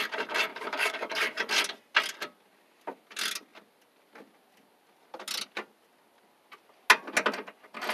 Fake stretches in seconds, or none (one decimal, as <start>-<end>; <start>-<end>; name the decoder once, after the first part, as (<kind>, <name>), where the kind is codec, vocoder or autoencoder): 0.5-1.5 (codec, DAC)